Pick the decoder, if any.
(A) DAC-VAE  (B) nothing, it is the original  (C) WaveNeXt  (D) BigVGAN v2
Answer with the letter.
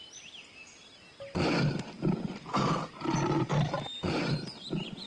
B